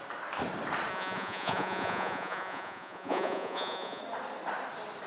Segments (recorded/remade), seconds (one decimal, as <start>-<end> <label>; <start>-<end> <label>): 0.0-0.9 recorded; 0.9-4.0 remade; 4.0-5.1 recorded